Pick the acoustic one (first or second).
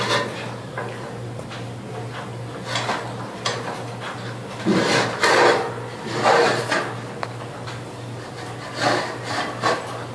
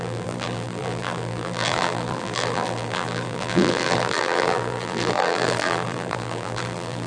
first